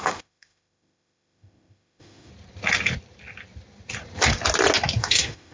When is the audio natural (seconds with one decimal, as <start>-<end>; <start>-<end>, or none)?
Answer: 2.3-5.0